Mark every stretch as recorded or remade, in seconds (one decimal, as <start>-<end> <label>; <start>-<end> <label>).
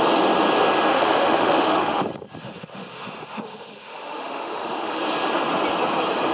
0.0-0.9 recorded; 0.9-2.0 remade; 2.0-2.4 recorded; 2.4-5.0 remade; 5.0-6.3 recorded